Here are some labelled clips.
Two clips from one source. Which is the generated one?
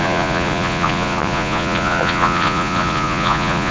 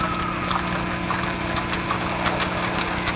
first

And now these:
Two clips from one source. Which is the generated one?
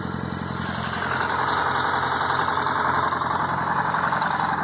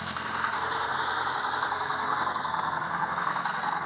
second